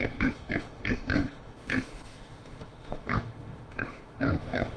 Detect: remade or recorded remade